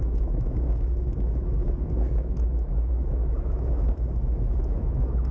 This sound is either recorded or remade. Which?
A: remade